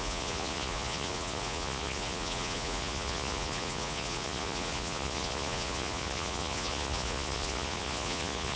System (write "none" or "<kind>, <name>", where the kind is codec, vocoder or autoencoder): vocoder, Vocos